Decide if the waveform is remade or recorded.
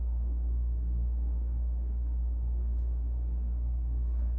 remade